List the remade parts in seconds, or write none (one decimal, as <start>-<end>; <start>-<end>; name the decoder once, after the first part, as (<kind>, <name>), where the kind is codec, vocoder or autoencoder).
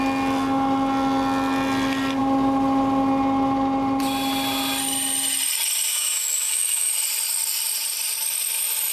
5.9-6.9 (autoencoder, DAC-VAE)